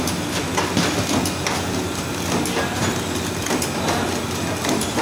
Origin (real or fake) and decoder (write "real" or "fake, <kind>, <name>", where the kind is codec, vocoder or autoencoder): real